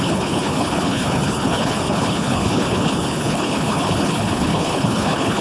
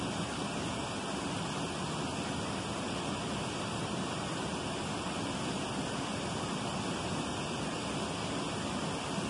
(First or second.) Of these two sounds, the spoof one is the first